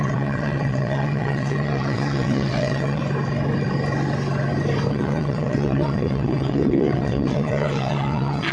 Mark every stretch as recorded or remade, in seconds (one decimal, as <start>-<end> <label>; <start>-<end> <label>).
0.0-3.0 remade; 3.0-4.9 recorded; 4.9-8.5 remade